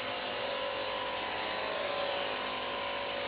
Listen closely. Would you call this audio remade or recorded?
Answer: recorded